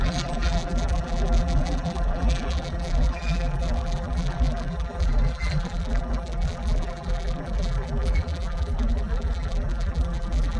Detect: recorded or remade remade